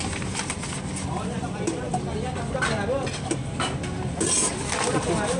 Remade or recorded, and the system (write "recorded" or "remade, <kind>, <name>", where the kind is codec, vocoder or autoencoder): recorded